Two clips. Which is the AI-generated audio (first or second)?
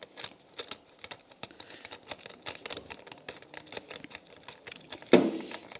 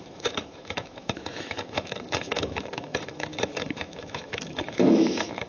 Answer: second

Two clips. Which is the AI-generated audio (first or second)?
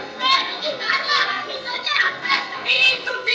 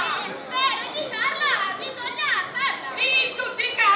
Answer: first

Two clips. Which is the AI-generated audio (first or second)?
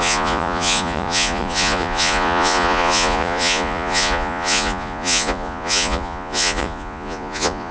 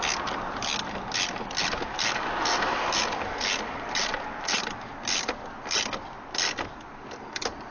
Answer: first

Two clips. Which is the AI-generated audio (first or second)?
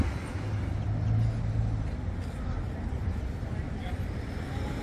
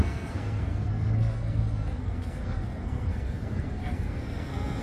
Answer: second